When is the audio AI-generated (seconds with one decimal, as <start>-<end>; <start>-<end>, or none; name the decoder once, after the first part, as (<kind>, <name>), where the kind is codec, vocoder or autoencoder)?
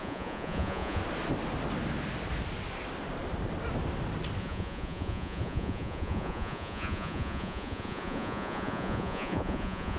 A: 0.0-1.0 (vocoder, Vocos); 4.4-10.0